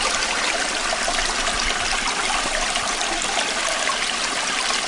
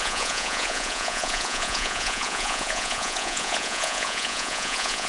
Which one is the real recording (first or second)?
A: first